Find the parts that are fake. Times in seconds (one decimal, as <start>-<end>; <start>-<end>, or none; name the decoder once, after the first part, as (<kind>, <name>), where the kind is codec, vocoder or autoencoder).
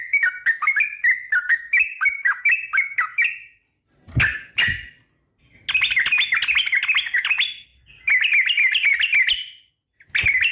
1.4-2.6 (autoencoder, DAC-VAE)